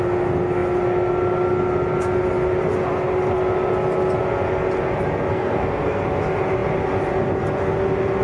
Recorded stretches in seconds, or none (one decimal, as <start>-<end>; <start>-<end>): 0.0-5.3; 6.0-8.2